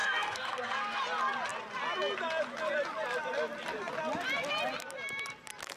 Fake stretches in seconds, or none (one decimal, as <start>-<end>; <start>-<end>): 0.0-1.0